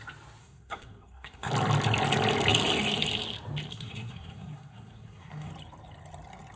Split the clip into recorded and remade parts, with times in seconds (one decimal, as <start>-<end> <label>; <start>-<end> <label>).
0.0-0.4 recorded; 0.4-1.5 remade; 1.5-3.7 recorded; 3.7-5.5 remade; 5.5-6.6 recorded